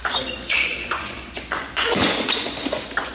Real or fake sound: fake